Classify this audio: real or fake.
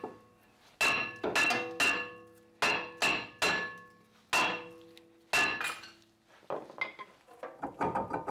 real